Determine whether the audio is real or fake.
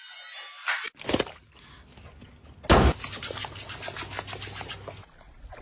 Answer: real